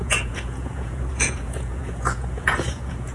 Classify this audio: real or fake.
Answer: fake